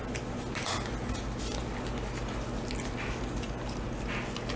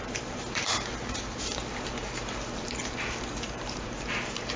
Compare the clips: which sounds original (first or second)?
first